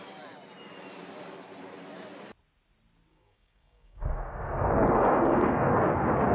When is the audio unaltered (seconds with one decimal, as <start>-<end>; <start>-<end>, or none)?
0.0-3.1; 5.7-6.3